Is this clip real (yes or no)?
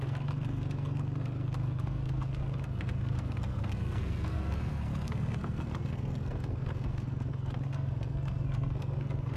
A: no